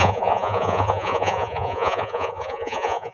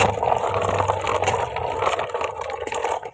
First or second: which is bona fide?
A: second